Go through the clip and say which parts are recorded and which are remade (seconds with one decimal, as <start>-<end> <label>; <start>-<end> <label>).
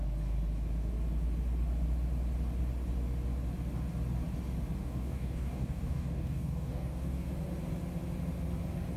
0.0-4.8 recorded; 4.8-7.3 remade; 7.3-9.0 recorded